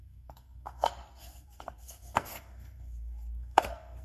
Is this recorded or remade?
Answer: remade